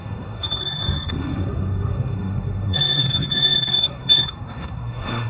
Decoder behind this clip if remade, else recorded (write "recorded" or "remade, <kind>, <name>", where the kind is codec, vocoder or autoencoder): remade, codec, SNAC